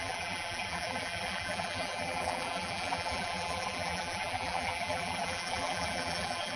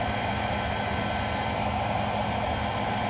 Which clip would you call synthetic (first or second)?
first